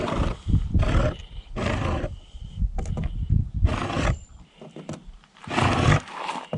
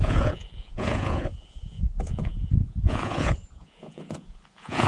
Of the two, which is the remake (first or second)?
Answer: second